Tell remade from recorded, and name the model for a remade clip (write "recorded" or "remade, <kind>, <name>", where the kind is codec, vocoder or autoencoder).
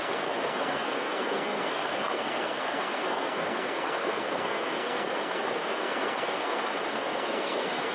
remade, codec, SNAC